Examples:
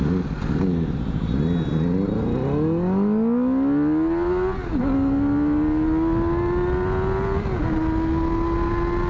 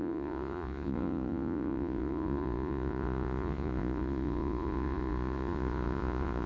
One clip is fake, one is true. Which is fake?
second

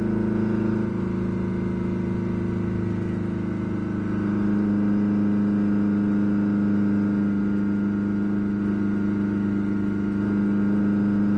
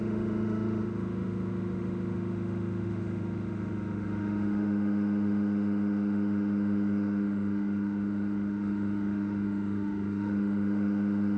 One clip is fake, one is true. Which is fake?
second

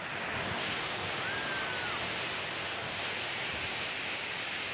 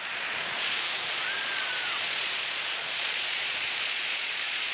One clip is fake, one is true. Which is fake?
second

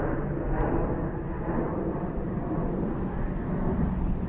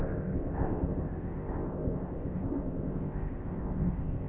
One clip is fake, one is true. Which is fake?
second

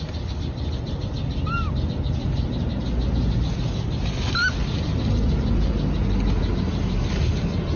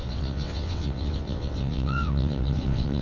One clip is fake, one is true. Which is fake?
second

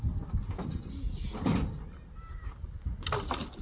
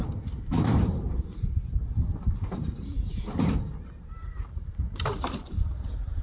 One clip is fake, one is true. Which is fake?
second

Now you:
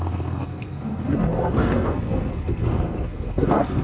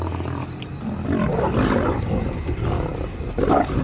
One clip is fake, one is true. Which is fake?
first